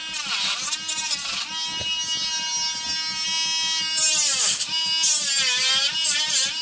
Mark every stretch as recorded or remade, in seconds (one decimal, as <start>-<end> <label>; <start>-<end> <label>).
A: 0.0-6.6 recorded